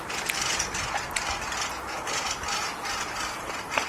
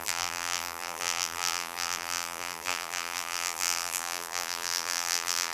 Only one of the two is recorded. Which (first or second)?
first